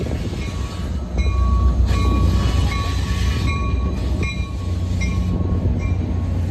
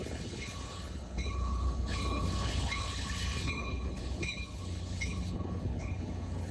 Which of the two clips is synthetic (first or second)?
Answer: second